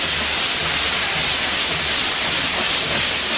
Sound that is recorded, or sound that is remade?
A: recorded